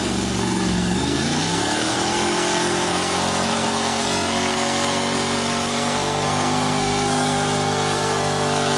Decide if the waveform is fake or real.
fake